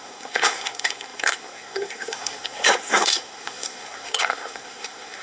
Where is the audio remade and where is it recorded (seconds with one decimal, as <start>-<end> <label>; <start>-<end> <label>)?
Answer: 0.0-5.2 remade